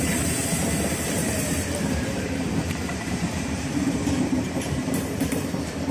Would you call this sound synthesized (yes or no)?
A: yes